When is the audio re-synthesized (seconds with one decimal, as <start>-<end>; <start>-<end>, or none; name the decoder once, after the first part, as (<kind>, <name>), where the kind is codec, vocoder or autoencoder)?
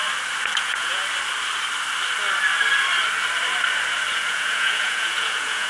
0.6-1.0 (vocoder, Vocos); 4.1-5.7